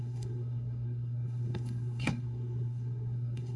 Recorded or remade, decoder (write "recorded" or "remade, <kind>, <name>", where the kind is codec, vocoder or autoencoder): remade, codec, SNAC